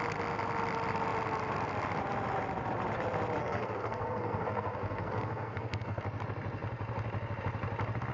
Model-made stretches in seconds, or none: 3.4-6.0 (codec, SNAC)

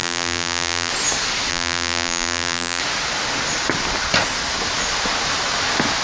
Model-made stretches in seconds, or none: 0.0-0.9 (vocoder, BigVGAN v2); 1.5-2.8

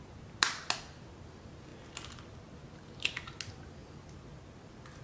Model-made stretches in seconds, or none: none

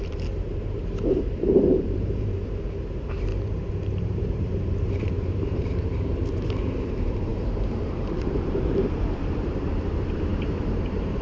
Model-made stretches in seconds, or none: 0.0-3.3 (vocoder, BigVGAN v2); 3.9-11.2